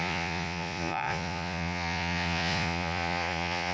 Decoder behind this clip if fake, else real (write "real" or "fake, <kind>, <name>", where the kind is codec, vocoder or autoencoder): fake, vocoder, Vocos